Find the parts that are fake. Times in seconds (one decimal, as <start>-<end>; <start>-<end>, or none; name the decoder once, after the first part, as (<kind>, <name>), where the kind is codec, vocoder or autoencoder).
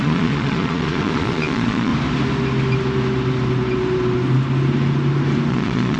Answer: 0.0-1.9 (vocoder, Vocos); 5.5-6.0